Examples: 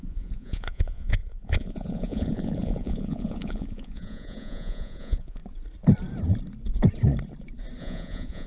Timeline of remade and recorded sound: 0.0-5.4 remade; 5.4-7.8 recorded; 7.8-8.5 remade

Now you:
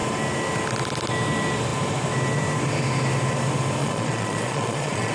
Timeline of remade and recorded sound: 0.0-3.8 recorded; 3.8-5.1 remade

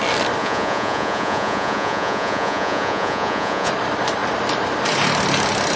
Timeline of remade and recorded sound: 0.0-0.4 recorded; 0.4-3.7 remade; 3.7-5.8 recorded

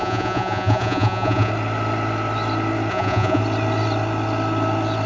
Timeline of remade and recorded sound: 0.0-1.5 remade; 1.5-2.9 recorded; 2.9-3.4 remade; 3.4-5.1 recorded